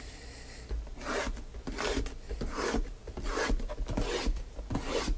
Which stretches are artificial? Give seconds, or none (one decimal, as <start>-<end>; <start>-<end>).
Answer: none